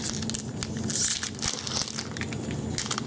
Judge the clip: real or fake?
real